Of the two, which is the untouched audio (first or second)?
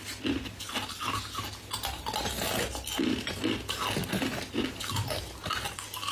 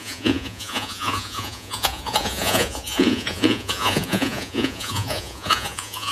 first